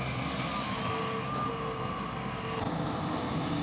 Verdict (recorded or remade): recorded